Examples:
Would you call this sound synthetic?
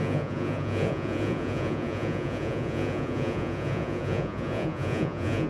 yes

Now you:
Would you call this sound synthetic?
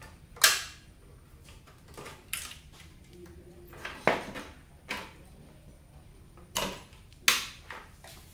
no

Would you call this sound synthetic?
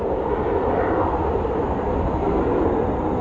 no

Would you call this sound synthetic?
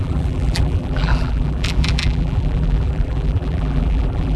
yes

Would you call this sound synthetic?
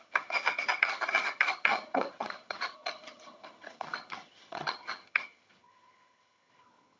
yes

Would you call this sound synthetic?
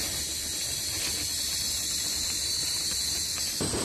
no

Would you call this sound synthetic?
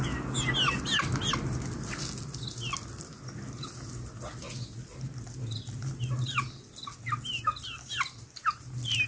no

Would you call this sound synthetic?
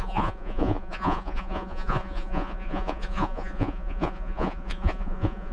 yes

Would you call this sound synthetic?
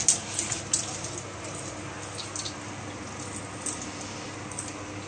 no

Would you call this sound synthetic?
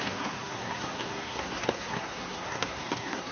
yes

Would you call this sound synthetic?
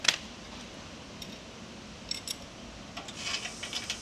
no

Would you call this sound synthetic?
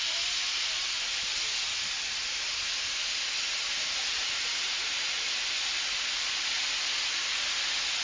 no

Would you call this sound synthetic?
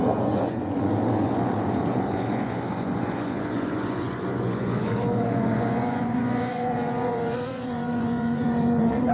yes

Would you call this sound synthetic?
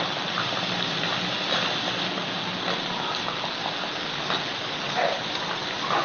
no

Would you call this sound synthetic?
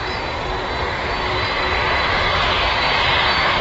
no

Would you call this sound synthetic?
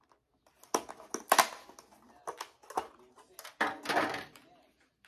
no